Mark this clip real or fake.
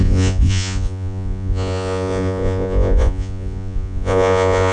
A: fake